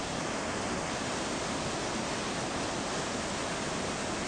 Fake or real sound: real